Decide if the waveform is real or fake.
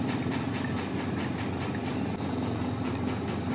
real